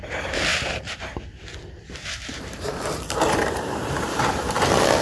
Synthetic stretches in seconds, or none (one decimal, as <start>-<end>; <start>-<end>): 0.5-1.0; 1.6-4.6